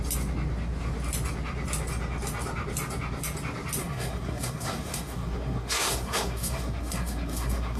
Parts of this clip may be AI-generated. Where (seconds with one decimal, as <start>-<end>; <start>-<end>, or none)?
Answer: 3.8-7.8

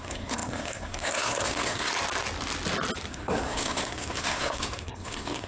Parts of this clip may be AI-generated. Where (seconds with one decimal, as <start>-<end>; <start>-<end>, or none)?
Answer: 0.0-1.9; 3.1-5.5

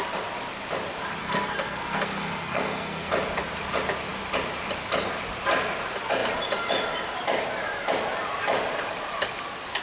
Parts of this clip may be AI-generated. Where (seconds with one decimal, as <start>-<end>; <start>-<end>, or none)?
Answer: 1.2-3.1

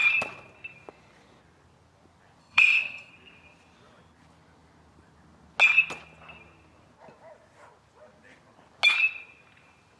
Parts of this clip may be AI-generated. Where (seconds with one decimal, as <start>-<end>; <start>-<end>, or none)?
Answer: 2.4-3.1

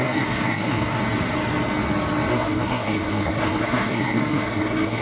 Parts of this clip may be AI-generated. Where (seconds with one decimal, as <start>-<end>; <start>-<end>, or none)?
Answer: 0.0-1.0; 2.3-5.0

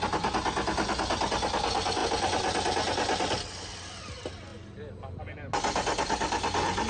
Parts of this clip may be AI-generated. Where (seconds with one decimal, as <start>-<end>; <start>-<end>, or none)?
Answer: none

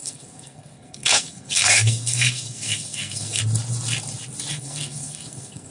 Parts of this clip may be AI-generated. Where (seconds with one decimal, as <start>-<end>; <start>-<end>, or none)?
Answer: 0.0-3.4; 4.5-5.7